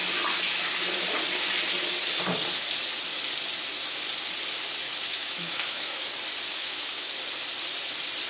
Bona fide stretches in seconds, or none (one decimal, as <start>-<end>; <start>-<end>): 0.0-5.1; 6.0-6.5; 7.1-8.3